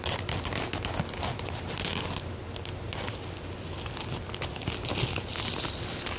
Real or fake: real